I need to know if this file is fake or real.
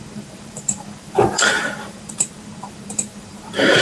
fake